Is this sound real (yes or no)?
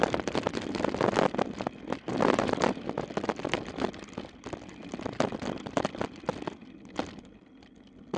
yes